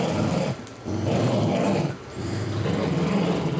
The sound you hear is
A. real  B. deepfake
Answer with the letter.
A